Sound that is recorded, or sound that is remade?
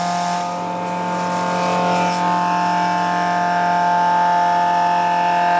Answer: recorded